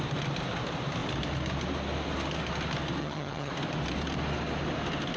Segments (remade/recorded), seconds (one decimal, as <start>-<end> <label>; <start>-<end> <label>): 0.0-3.0 recorded; 3.0-3.5 remade; 3.5-5.2 recorded